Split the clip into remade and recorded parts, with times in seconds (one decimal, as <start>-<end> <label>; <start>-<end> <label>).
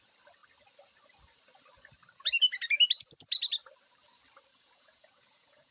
0.0-4.5 recorded; 4.5-5.7 remade